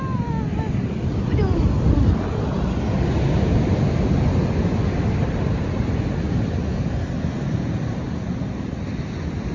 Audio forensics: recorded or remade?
recorded